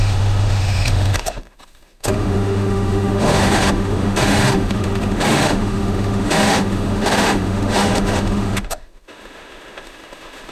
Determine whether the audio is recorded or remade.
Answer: remade